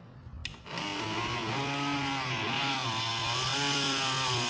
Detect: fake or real real